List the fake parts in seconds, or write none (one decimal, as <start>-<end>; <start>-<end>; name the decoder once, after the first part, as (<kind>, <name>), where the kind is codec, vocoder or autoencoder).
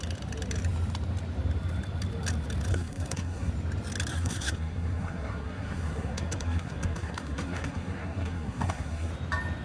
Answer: 2.7-3.5 (codec, SNAC); 4.1-9.1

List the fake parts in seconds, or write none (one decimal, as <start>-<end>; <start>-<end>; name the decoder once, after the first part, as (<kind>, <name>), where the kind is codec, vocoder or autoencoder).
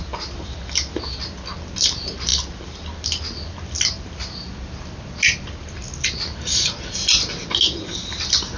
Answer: none